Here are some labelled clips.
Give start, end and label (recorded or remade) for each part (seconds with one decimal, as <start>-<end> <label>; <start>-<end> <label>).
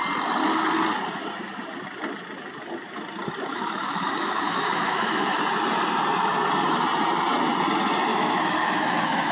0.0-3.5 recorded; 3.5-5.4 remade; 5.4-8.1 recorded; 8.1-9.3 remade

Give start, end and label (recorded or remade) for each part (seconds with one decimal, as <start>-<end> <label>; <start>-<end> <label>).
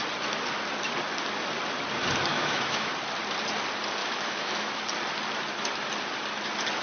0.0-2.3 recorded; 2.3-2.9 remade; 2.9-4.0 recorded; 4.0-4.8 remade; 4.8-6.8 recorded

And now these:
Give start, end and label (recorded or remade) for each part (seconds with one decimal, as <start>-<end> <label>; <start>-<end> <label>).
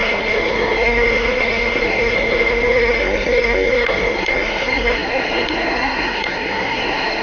0.0-7.2 remade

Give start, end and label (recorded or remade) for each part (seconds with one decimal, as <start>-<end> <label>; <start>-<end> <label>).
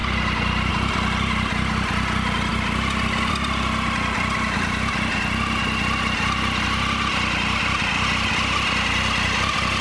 0.0-9.8 recorded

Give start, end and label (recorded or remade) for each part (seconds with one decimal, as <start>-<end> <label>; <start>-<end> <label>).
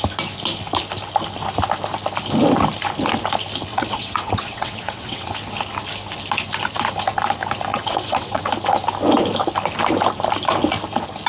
0.0-3.7 recorded; 3.7-5.3 remade; 5.3-7.7 recorded; 7.7-8.4 remade; 8.4-11.3 recorded